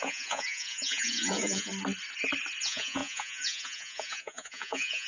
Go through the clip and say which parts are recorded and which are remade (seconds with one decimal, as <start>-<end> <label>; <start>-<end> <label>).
0.0-1.7 remade; 1.7-2.6 recorded; 2.6-5.1 remade